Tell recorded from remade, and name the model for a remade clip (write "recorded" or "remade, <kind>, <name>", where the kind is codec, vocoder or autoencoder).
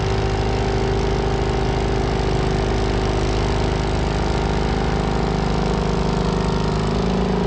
recorded